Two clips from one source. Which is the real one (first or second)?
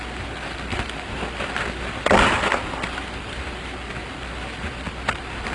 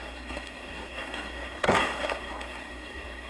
first